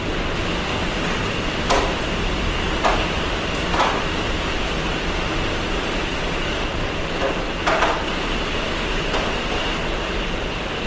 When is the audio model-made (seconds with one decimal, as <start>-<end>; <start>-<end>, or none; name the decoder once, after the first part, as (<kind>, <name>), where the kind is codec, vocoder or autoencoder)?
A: 6.0-6.9 (vocoder, BigVGAN v2)